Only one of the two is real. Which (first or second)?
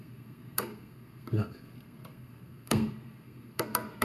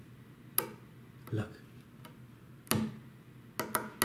second